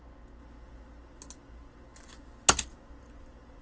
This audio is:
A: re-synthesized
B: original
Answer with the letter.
B